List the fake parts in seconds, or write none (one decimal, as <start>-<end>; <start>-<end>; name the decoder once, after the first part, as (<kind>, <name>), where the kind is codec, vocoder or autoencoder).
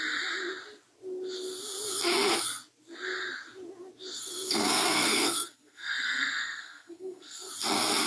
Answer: 4.2-7.5 (codec, SNAC)